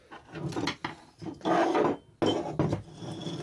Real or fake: real